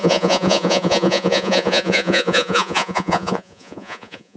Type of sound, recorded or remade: remade